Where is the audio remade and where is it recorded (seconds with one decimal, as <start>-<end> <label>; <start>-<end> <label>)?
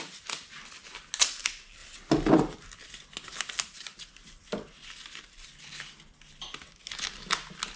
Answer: 0.0-7.8 recorded